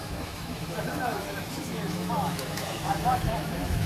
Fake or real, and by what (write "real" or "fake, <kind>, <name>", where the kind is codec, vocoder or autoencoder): fake, autoencoder, DAC-VAE